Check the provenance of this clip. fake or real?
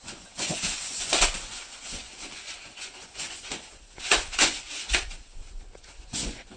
fake